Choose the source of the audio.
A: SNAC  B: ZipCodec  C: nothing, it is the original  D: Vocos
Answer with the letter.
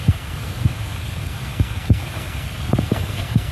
A